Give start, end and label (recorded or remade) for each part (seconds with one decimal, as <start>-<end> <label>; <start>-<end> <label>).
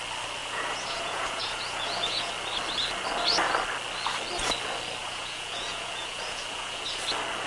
0.0-0.4 recorded; 0.4-2.3 remade; 2.3-5.0 recorded; 5.0-7.0 remade; 7.0-7.5 recorded